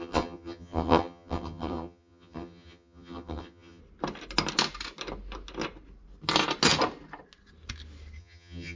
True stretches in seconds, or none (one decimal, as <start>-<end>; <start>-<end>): 3.8-8.2